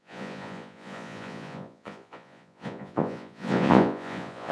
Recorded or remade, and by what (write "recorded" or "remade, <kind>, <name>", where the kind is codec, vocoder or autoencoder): remade, vocoder, Vocos